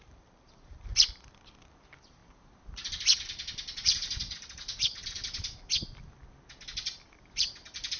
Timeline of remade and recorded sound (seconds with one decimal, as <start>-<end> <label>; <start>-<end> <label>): 0.0-0.9 remade; 0.9-1.5 recorded; 1.5-6.2 remade; 6.2-6.9 recorded; 6.9-8.0 remade